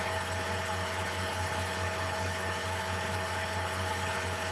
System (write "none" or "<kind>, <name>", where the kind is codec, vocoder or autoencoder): codec, HILCodec